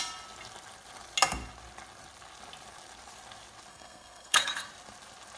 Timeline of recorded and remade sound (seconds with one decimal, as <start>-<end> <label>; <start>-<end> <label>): 0.0-3.7 recorded; 3.7-4.7 remade; 4.7-5.4 recorded